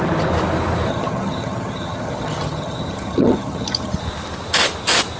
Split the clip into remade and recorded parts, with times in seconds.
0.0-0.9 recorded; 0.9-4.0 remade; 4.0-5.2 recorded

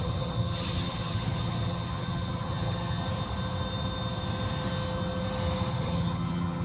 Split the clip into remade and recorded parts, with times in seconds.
0.0-3.0 remade; 3.0-5.7 recorded; 5.7-6.6 remade

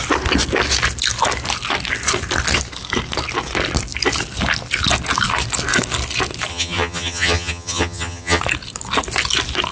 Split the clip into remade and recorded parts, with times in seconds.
0.0-6.5 recorded; 6.5-8.4 remade; 8.4-9.7 recorded

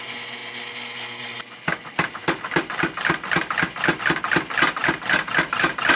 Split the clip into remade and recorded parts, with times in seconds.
0.0-6.0 recorded